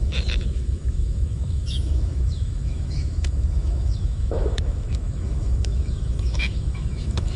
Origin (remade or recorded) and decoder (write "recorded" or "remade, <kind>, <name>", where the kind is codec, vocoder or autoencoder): remade, autoencoder, DAC-VAE